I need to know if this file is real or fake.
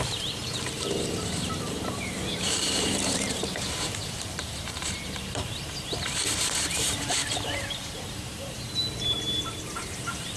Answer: fake